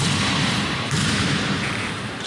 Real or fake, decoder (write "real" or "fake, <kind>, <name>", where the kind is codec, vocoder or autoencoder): fake, vocoder, BigVGAN v2